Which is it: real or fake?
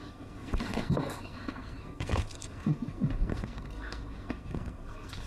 fake